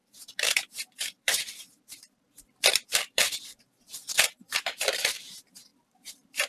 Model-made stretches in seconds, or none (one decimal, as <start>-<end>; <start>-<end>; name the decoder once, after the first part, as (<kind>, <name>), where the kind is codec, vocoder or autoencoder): 0.0-6.5 (vocoder, BigVGAN v2)